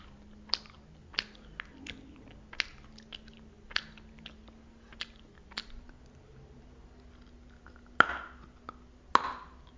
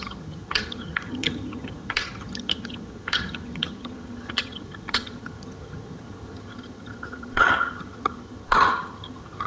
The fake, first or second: second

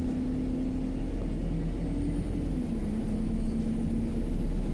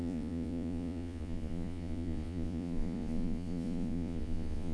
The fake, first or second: second